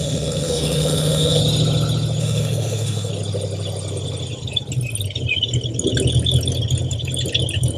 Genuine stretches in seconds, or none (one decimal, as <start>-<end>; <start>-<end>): 1.4-2.2; 3.1-7.8